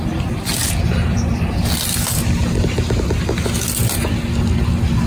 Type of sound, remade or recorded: recorded